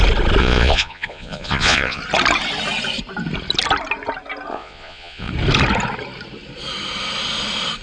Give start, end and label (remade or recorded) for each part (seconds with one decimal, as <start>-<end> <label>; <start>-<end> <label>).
0.0-0.4 recorded; 0.4-2.0 remade; 2.0-4.5 recorded; 4.5-5.3 remade; 5.3-7.8 recorded